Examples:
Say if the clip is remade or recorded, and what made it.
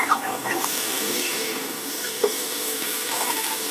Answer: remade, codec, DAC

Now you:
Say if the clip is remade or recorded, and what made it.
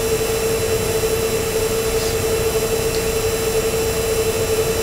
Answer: recorded